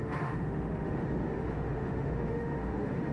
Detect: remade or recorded remade